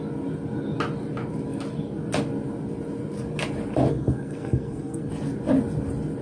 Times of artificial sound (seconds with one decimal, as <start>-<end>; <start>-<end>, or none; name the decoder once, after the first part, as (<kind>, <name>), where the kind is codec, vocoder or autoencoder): 3.9-5.1 (codec, SNAC)